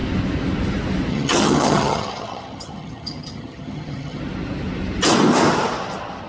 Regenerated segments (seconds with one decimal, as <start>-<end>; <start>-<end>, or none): 1.1-4.2